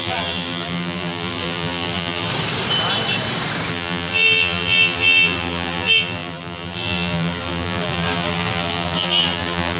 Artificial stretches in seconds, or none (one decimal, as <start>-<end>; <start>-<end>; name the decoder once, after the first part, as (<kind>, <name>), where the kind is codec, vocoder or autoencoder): 0.0-2.3 (vocoder, BigVGAN v2); 3.7-9.8